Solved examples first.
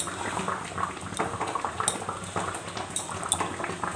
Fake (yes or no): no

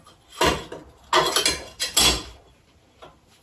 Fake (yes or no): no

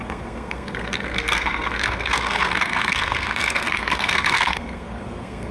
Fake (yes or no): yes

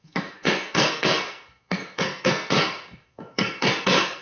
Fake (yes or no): yes